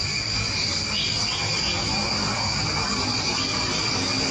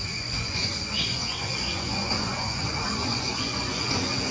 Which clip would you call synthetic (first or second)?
second